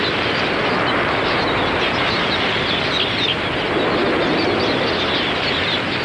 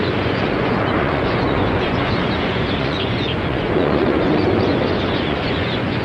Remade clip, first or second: second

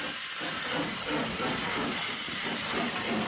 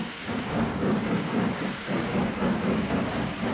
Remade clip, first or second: second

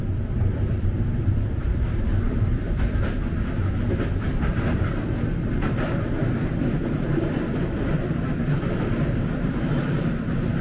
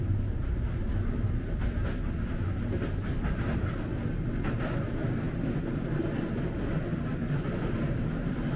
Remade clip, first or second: first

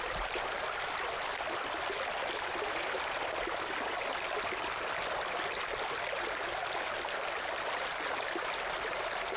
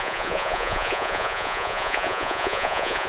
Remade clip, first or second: second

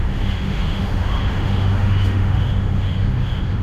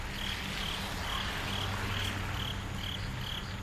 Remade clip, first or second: first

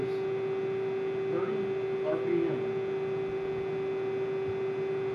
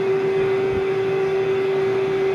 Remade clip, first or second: second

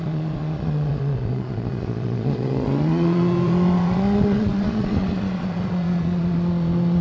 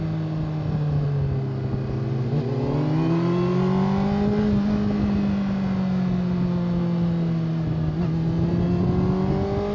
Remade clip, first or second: first